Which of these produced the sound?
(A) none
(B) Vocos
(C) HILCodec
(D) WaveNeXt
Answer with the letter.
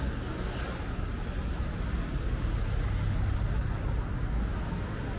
A